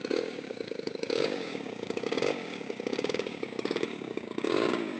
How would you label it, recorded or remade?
remade